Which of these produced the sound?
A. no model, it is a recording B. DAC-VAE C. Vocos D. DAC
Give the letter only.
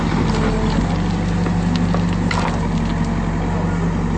A